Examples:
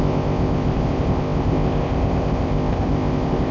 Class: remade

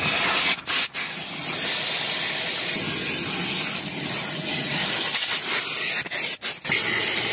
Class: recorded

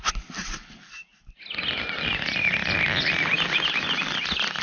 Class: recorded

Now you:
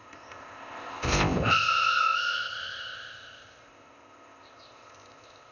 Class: remade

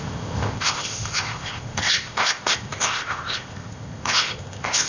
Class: remade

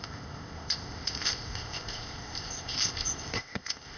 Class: remade